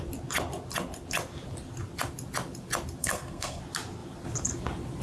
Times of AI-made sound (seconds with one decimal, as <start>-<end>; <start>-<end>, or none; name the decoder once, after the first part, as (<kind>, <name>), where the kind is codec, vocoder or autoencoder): 3.0-3.6 (codec, SNAC)